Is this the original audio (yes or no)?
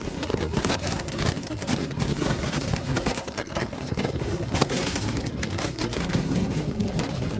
no